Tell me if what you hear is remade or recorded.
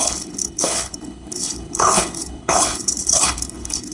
remade